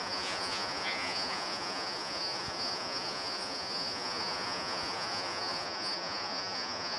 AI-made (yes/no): yes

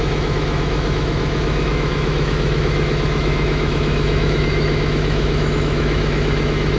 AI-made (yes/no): yes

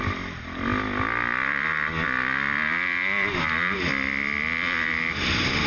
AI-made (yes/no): no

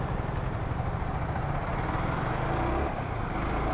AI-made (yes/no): no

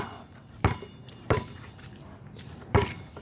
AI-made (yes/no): yes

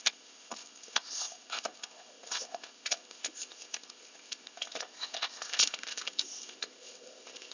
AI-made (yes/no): yes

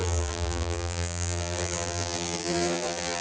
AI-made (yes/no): yes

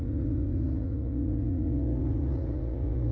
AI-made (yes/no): yes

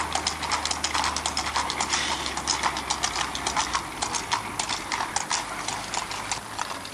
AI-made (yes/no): no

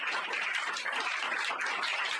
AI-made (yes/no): no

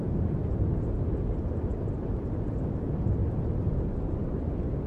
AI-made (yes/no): no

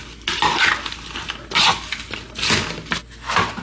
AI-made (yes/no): no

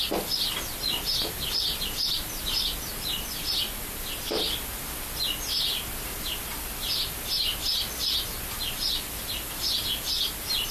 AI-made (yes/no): no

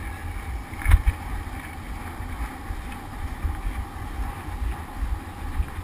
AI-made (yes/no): no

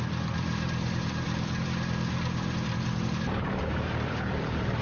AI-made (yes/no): yes